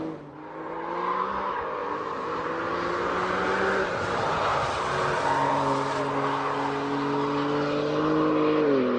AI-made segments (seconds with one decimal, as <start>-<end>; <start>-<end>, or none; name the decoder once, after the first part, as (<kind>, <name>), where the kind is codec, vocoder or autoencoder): 1.8-2.5 (vocoder, BigVGAN v2)